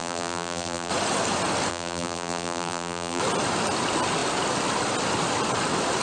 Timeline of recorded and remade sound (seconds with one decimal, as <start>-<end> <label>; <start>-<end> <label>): 0.0-0.9 remade; 0.9-1.7 recorded; 1.7-3.2 remade; 3.2-6.0 recorded